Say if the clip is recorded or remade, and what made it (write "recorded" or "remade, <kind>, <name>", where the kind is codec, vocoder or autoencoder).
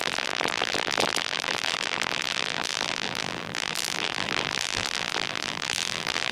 remade, vocoder, BigVGAN v2